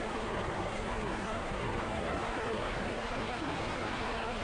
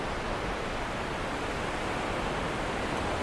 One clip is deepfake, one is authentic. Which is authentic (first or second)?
second